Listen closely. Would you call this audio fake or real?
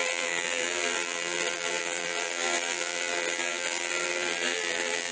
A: fake